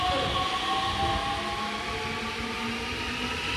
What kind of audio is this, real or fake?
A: real